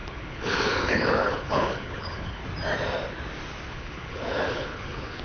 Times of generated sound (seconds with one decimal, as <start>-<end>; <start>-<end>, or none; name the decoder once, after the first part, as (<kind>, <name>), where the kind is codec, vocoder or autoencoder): 0.0-2.4 (codec, HILCodec); 3.7-5.2